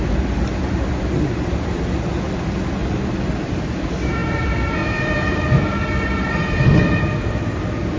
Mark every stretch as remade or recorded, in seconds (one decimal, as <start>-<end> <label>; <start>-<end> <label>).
0.0-8.0 recorded